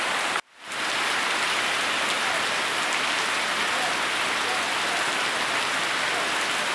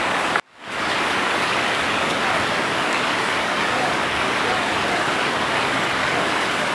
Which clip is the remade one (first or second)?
second